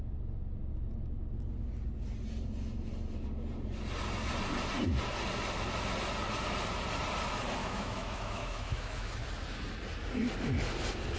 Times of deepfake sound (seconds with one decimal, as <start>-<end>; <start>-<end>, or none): 7.6-9.2